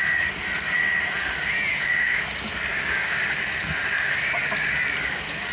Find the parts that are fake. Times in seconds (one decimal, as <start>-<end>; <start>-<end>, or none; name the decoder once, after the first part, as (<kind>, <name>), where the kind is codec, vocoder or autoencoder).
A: 1.7-2.2 (codec, DAC); 2.7-3.2